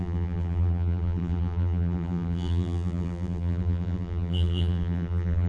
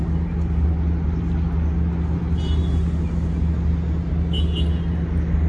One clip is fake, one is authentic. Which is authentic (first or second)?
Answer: second